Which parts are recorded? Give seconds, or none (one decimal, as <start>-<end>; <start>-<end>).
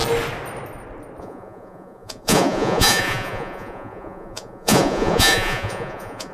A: 0.0-1.2